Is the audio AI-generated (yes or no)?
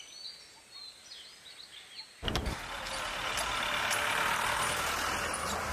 no